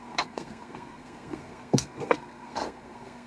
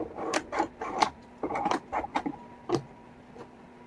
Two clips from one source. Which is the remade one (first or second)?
first